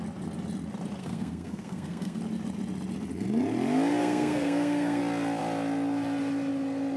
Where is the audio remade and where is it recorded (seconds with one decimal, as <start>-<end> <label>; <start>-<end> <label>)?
0.0-1.0 recorded; 1.0-2.2 remade; 2.2-4.0 recorded; 4.0-5.0 remade; 5.0-7.0 recorded